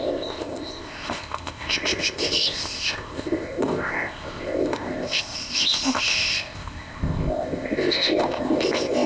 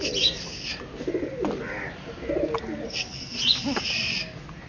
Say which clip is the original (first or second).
second